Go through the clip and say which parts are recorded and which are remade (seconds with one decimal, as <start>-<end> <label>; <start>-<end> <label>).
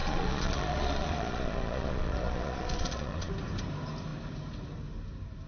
0.0-3.3 remade; 3.3-5.5 recorded